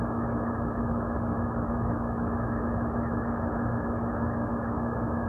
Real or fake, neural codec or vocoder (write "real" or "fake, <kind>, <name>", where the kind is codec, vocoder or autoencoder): fake, autoencoder, DAC-VAE